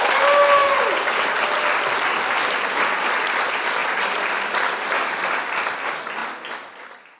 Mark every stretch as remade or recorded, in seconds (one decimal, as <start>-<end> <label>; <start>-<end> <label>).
0.0-7.2 recorded